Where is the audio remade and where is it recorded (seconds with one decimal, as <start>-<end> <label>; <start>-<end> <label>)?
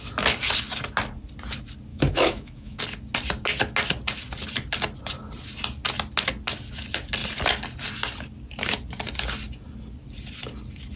0.0-1.9 recorded; 1.9-2.8 remade; 2.8-11.0 recorded